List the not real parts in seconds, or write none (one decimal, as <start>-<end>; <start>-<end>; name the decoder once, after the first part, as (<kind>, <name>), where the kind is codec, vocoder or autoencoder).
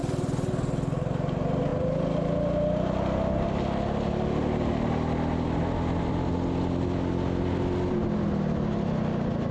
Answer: none